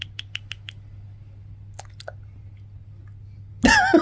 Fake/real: real